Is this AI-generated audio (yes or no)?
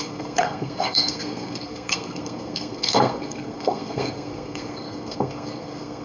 yes